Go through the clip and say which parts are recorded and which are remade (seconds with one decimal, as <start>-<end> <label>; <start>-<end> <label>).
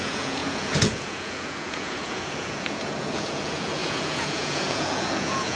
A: 0.0-5.6 remade